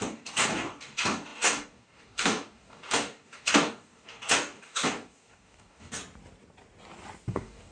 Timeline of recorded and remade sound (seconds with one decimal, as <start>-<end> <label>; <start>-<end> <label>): 0.0-6.0 remade; 6.0-7.3 recorded; 7.3-7.7 remade